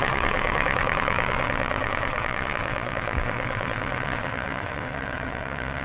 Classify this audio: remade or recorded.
remade